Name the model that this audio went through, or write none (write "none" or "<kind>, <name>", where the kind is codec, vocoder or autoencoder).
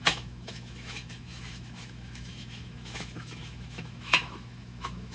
autoencoder, DAC-VAE